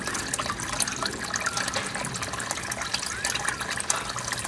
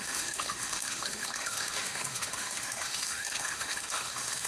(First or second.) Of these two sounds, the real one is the first